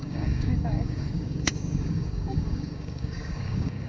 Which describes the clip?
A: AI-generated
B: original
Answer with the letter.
A